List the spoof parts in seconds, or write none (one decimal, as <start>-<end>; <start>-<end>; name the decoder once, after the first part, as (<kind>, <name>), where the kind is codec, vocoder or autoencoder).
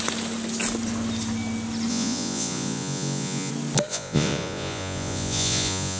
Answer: 1.9-3.5 (vocoder, Vocos); 3.9-6.0